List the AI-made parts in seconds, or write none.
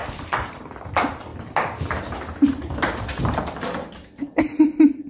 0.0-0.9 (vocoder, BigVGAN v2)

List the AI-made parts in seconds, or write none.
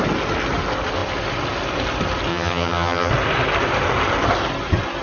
2.3-3.1 (vocoder, HiFi-GAN)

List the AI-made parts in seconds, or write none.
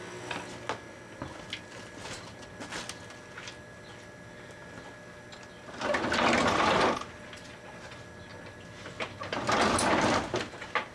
none